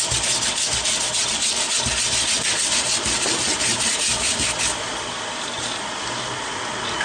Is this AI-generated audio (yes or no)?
no